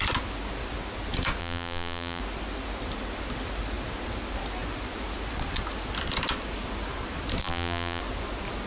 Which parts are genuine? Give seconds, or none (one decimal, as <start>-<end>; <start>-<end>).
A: 0.0-1.4; 2.2-7.4; 8.0-8.7